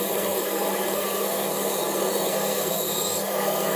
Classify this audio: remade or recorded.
remade